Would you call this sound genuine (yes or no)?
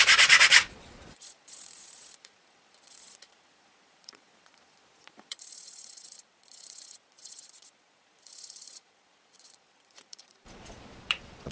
no